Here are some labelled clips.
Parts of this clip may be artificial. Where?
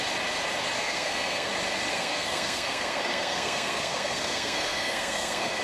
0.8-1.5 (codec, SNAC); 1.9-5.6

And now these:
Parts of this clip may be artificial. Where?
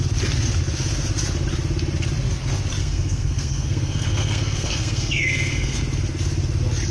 2.8-5.8 (codec, SNAC)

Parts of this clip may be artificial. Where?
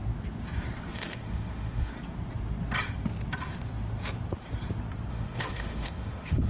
0.9-1.9 (autoencoder, DAC-VAE); 5.1-6.5